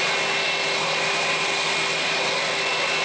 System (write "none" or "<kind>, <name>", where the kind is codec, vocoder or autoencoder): none